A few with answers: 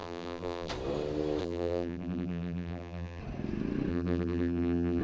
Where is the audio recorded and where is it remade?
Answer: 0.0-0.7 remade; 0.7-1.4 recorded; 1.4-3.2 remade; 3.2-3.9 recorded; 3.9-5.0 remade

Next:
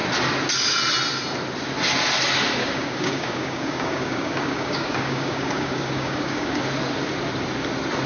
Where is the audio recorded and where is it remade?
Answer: 0.0-2.6 recorded; 2.6-6.6 remade; 6.6-8.1 recorded

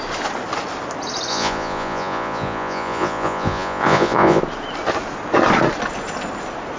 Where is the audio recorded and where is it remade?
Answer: 0.0-1.3 recorded; 1.3-4.4 remade; 4.4-6.8 recorded

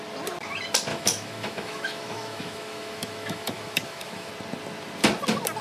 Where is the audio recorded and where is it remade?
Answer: 0.0-0.9 recorded; 0.9-4.3 remade; 4.3-5.6 recorded